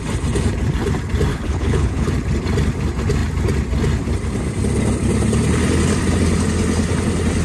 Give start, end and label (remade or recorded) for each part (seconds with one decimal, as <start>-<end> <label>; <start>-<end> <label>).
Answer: 0.0-1.3 recorded; 1.3-2.1 remade; 2.1-7.4 recorded